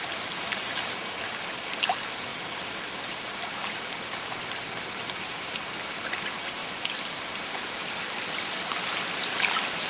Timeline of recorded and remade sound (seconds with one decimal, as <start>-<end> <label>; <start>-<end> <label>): 0.0-2.3 recorded; 2.3-4.3 remade; 4.3-9.9 recorded